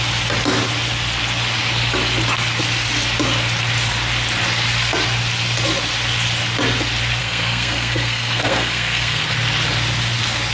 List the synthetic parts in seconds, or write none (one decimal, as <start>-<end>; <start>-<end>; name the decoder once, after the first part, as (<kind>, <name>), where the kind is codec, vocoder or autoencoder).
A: 7.2-9.2 (codec, SNAC)